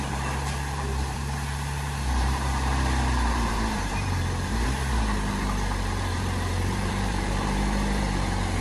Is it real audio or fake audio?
fake